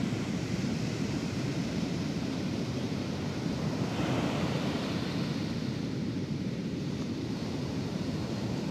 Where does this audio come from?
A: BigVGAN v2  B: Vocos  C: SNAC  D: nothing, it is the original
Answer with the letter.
A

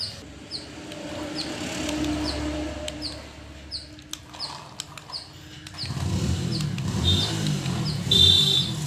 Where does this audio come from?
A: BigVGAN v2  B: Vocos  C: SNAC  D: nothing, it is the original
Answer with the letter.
D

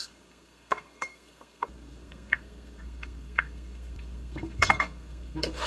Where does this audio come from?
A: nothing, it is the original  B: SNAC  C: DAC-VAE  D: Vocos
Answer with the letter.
B